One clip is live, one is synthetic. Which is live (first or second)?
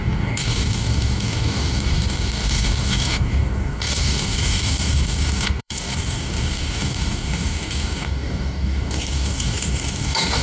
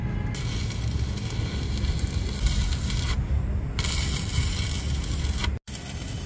second